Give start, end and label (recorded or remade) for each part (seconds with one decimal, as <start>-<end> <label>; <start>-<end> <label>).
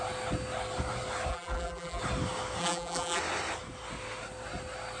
0.0-1.3 recorded; 1.3-2.0 remade; 2.0-2.6 recorded; 2.6-3.2 remade; 3.2-5.0 recorded